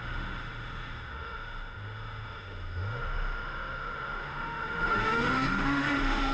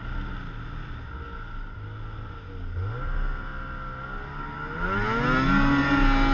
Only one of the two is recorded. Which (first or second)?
second